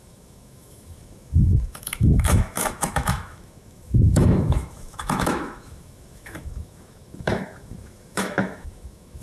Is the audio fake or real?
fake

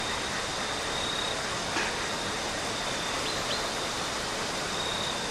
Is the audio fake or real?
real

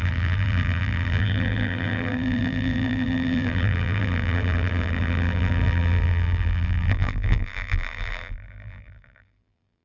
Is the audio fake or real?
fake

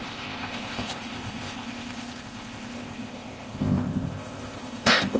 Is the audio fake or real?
fake